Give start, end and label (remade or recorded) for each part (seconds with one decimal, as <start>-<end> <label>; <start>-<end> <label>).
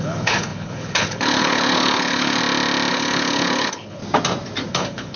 0.0-2.4 remade; 2.4-2.9 recorded; 2.9-4.0 remade; 4.0-4.7 recorded; 4.7-5.2 remade